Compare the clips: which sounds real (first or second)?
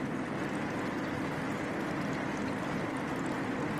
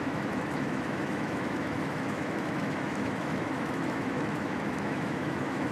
first